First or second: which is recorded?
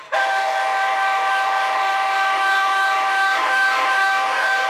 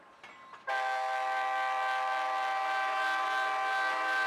second